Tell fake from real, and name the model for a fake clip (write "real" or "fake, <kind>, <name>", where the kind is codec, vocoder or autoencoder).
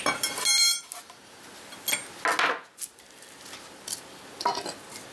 real